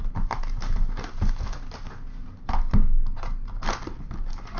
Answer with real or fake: real